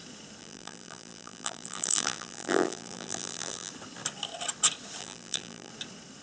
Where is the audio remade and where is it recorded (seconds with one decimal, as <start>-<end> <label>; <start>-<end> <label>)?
0.0-0.4 recorded; 0.4-3.7 remade; 3.7-5.0 recorded; 5.0-5.7 remade; 5.7-6.2 recorded